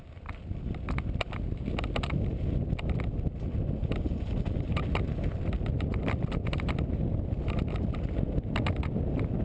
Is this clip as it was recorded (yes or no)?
yes